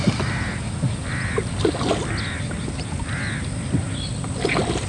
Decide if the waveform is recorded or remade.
recorded